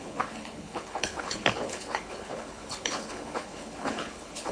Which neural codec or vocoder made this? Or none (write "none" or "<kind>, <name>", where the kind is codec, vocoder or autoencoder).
codec, HILCodec